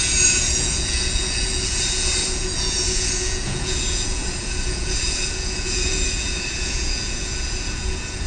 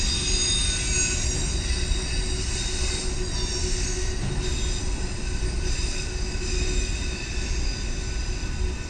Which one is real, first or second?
second